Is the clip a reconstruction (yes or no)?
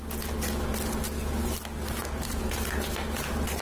no